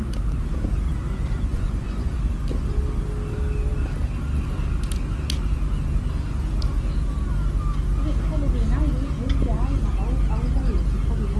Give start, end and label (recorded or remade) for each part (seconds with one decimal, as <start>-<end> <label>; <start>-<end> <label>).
0.0-1.5 recorded; 1.5-2.2 remade; 2.2-11.4 recorded